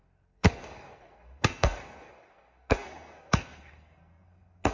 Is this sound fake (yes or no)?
yes